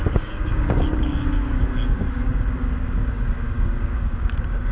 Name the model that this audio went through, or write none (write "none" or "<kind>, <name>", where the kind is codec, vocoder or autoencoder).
codec, DAC